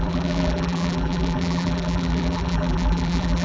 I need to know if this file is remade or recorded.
remade